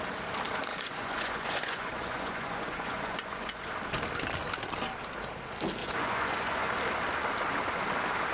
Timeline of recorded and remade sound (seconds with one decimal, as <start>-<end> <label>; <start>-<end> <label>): 0.0-0.7 recorded; 0.7-3.7 remade; 3.7-5.8 recorded; 5.8-6.7 remade; 6.7-8.3 recorded